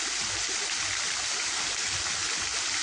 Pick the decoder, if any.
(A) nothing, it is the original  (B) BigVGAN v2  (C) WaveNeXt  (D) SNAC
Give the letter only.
A